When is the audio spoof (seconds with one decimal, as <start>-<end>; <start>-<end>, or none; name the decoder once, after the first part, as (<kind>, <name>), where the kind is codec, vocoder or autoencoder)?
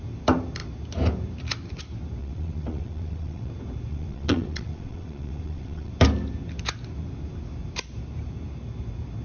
2.2-3.5 (vocoder, WaveNeXt); 3.9-5.9